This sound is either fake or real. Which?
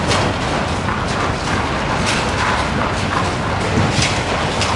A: real